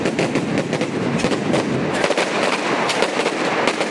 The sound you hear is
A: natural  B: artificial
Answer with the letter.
A